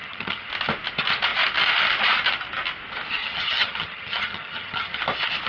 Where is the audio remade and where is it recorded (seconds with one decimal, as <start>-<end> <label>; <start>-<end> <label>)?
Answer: 0.0-0.5 remade; 0.5-3.2 recorded; 3.2-5.0 remade; 5.0-5.5 recorded